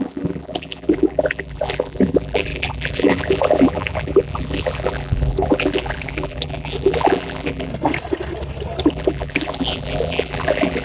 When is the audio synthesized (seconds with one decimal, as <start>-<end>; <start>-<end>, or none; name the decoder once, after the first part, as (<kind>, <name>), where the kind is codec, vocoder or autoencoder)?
0.0-7.7 (vocoder, BigVGAN v2); 8.9-10.8